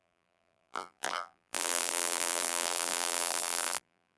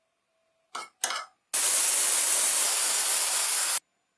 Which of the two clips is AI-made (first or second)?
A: first